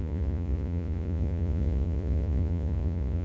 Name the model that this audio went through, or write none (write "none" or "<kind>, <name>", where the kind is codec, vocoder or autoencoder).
vocoder, Vocos